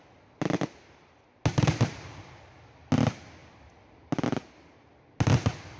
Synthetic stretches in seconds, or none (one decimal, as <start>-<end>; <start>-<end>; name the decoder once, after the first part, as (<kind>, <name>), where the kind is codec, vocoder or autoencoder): none